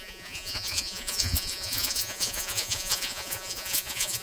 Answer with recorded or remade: remade